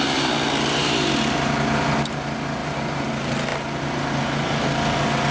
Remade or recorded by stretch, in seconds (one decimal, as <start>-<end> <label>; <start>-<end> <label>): 0.0-2.6 recorded; 2.6-3.1 remade; 3.1-5.3 recorded